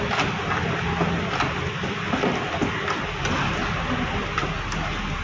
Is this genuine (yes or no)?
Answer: yes